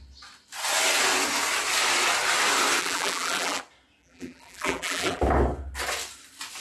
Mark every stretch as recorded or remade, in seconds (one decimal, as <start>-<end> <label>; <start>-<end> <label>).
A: 0.0-2.8 recorded; 2.8-3.6 remade; 3.6-4.0 recorded; 4.0-5.2 remade; 5.2-6.6 recorded